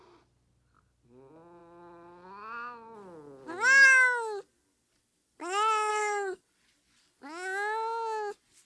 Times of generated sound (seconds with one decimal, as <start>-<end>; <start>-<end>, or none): 5.9-6.4